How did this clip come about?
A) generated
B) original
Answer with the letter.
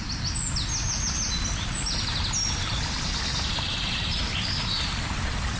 B